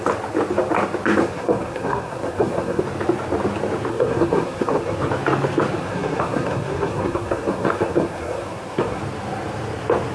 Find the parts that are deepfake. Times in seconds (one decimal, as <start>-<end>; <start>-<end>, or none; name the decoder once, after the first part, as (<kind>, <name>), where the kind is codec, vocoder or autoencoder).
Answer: 1.2-2.8 (codec, SNAC); 3.9-5.1; 5.8-9.0